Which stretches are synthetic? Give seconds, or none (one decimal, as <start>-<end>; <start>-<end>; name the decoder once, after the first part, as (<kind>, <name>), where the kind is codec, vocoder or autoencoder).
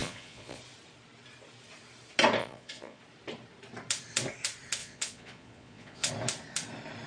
0.0-0.6 (vocoder, Vocos); 2.4-3.0; 4.8-6.1